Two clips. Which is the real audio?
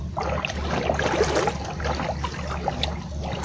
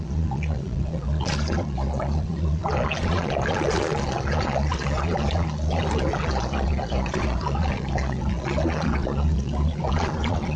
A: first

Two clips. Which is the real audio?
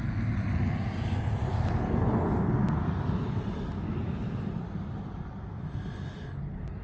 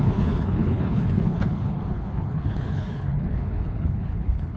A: first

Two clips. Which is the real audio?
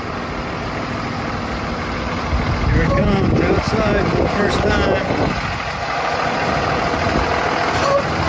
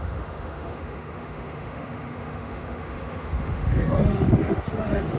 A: first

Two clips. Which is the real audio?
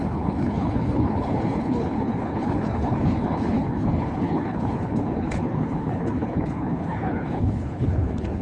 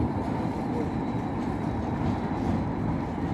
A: second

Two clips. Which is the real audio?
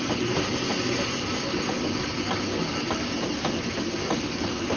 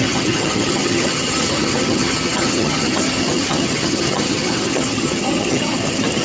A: first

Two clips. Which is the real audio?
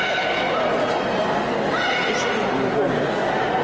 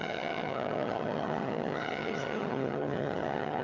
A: first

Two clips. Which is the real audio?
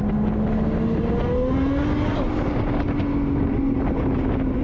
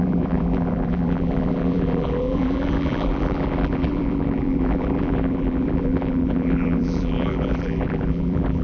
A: first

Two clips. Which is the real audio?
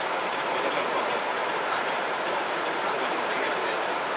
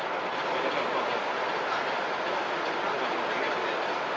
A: second